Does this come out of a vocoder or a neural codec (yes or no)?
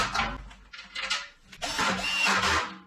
no